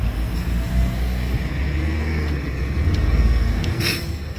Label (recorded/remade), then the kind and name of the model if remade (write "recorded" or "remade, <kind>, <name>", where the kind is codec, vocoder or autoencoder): remade, codec, SNAC